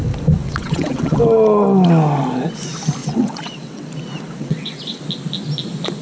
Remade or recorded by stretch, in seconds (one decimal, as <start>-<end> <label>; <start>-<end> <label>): 0.0-0.4 recorded; 0.4-1.2 remade; 1.2-3.0 recorded; 3.0-3.9 remade; 3.9-4.4 recorded; 4.4-5.0 remade; 5.0-6.0 recorded